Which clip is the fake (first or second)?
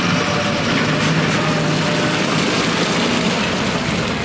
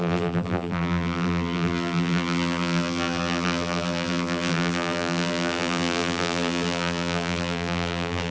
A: second